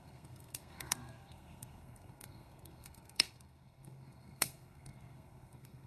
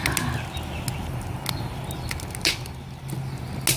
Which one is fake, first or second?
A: first